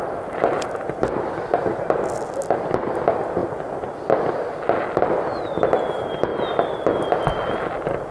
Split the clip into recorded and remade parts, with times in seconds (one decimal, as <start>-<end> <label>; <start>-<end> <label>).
0.0-8.1 recorded